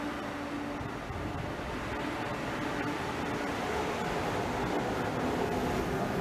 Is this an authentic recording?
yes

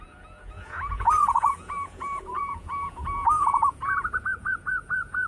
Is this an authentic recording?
no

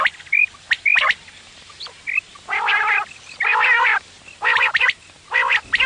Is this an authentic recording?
yes